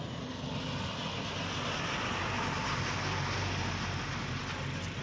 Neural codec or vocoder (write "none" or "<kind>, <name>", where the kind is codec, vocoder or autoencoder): none